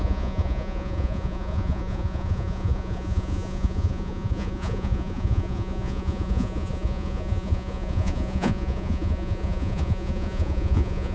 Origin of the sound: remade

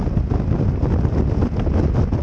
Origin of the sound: recorded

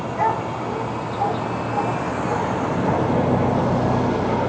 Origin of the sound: recorded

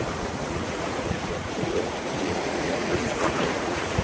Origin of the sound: remade